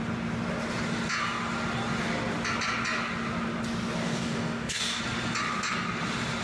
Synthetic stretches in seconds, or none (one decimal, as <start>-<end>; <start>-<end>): 4.0-5.0